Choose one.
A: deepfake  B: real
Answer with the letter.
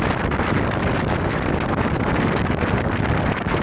B